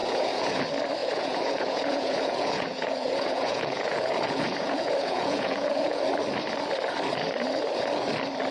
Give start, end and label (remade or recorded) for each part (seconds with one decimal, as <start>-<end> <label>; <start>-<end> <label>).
0.0-0.6 remade; 0.6-1.0 recorded; 1.0-6.0 remade; 6.0-8.5 recorded